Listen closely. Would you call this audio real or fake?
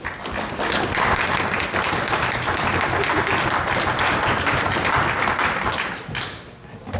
real